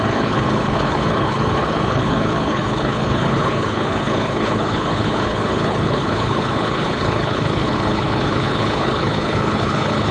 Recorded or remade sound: remade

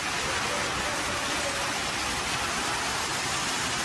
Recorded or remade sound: recorded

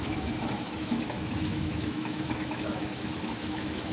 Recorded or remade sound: remade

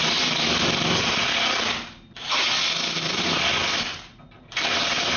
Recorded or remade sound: recorded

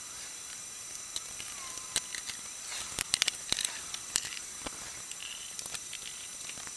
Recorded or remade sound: recorded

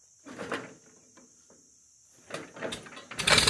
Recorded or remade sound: recorded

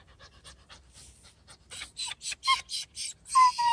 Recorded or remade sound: remade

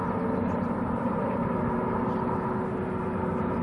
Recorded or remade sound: recorded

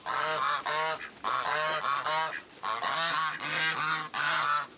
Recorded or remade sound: recorded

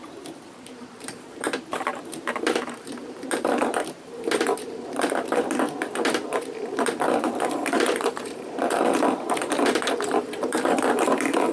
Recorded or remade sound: remade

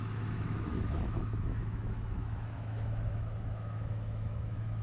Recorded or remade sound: remade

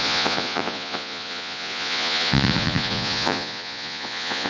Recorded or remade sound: remade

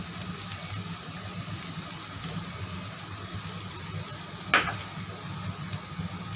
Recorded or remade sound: recorded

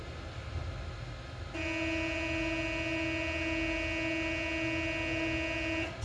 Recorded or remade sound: recorded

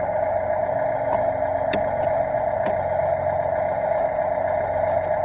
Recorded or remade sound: recorded